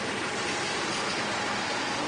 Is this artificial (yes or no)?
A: no